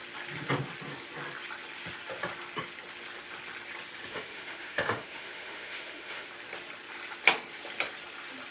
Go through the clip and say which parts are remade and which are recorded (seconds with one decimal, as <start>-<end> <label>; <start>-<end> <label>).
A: 0.0-4.1 recorded; 4.1-6.3 remade; 6.3-8.5 recorded